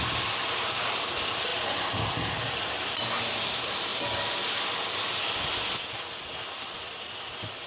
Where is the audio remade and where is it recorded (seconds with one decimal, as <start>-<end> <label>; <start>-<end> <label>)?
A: 0.0-3.9 remade; 3.9-7.3 recorded; 7.3-7.7 remade